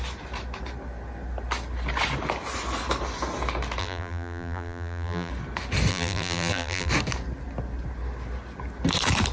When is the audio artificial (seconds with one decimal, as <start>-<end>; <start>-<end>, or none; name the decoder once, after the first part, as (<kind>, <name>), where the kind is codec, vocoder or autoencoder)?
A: 3.8-5.3 (vocoder, BigVGAN v2); 5.9-6.9